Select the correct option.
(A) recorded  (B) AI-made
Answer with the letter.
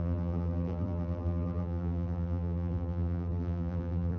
B